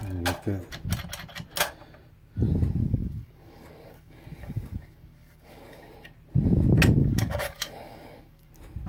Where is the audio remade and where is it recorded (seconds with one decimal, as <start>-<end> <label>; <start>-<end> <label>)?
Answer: 0.0-2.8 recorded; 2.8-5.9 remade; 5.9-7.0 recorded; 7.0-8.5 remade; 8.5-8.9 recorded